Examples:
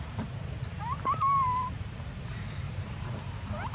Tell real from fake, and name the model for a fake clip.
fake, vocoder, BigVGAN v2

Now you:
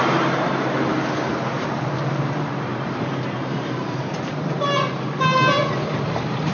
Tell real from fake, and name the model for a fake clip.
fake, vocoder, BigVGAN v2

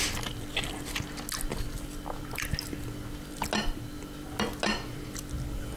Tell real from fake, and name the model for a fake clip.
real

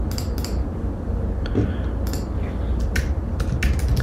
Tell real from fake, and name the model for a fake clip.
real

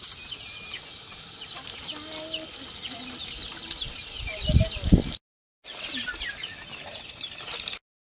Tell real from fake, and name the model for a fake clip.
real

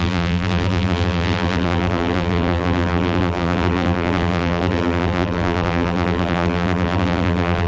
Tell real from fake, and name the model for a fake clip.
fake, vocoder, BigVGAN v2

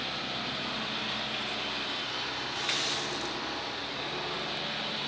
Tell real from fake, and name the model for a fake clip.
real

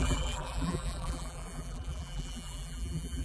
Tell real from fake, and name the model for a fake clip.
fake, vocoder, BigVGAN v2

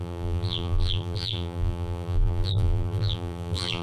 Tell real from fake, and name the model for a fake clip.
fake, vocoder, BigVGAN v2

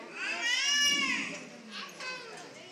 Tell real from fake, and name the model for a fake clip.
real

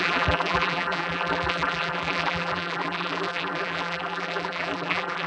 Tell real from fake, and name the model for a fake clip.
fake, vocoder, BigVGAN v2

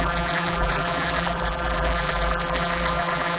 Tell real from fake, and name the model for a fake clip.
fake, vocoder, BigVGAN v2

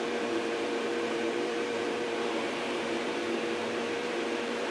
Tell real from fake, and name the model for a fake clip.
fake, vocoder, BigVGAN v2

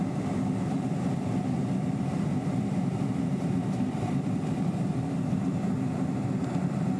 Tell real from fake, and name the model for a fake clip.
fake, vocoder, BigVGAN v2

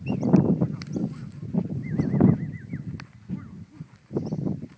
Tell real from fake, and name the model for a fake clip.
fake, vocoder, BigVGAN v2